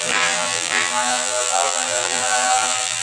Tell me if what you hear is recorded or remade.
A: remade